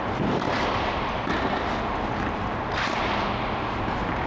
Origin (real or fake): real